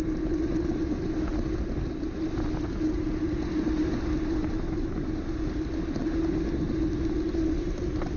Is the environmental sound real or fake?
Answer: real